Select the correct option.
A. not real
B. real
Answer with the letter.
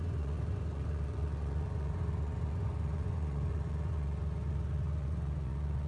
A